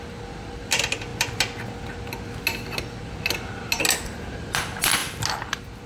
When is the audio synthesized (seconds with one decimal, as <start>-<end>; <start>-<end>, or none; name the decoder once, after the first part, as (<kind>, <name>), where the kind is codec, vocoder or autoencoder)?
none

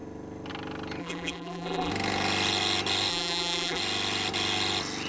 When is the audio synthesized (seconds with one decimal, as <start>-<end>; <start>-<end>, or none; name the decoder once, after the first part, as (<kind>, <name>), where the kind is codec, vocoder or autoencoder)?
1.0-1.9 (vocoder, BigVGAN v2); 3.1-3.8

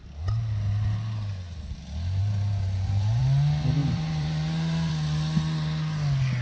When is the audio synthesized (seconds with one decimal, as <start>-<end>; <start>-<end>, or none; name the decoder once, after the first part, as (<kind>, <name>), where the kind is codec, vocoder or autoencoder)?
2.2-3.2 (vocoder, BigVGAN v2); 3.8-4.9

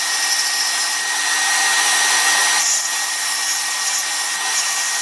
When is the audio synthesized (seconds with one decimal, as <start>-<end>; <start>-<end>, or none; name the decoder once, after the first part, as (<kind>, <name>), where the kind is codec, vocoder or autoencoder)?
none

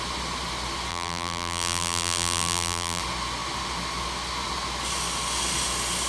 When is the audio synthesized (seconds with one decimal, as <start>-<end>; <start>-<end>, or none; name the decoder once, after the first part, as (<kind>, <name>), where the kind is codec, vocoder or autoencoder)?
0.9-3.0 (vocoder, BigVGAN v2)

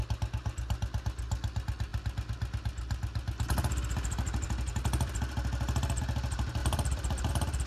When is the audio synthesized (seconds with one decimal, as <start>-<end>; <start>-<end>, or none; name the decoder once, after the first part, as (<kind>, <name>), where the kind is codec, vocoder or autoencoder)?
6.6-7.3 (vocoder, BigVGAN v2)

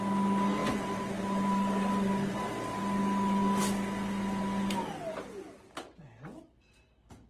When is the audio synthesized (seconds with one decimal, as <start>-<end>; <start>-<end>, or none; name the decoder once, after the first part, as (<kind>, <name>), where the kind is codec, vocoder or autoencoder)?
0.6-2.8 (vocoder, BigVGAN v2)

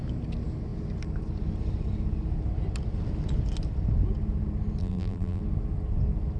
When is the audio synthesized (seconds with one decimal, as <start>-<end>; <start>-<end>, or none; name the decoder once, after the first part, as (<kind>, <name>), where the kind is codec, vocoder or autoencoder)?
4.8-5.4 (vocoder, BigVGAN v2)